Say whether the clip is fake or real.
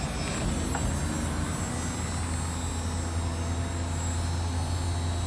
real